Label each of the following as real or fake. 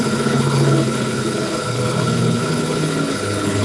fake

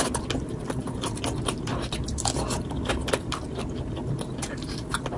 real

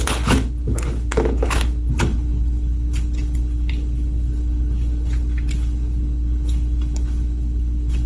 fake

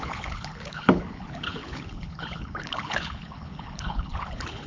fake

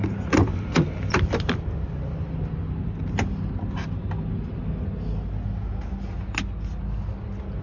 real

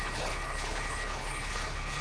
fake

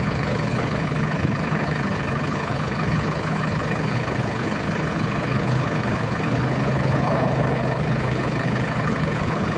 fake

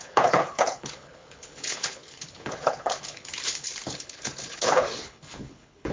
fake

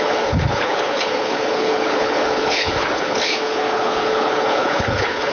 fake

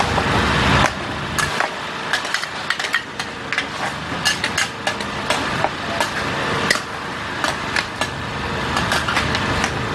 real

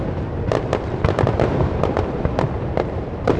real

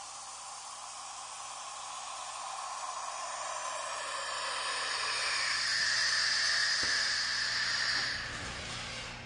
real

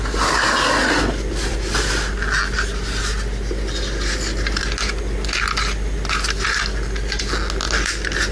real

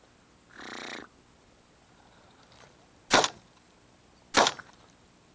real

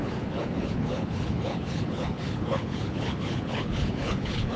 fake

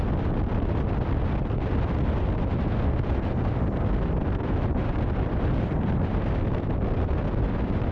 real